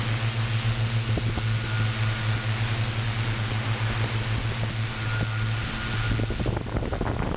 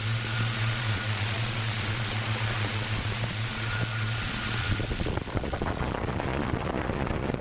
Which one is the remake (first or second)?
second